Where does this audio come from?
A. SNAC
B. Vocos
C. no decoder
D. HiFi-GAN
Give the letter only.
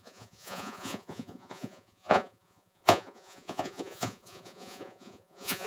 B